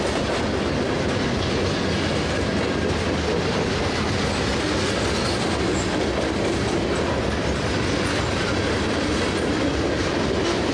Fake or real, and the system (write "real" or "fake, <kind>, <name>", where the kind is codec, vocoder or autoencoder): real